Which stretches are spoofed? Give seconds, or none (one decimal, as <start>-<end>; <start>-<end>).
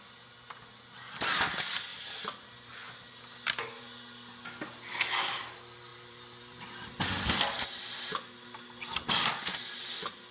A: 5.9-6.6